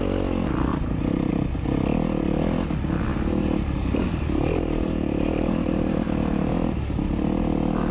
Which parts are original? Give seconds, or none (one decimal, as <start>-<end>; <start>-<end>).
0.0-0.7; 1.3-3.1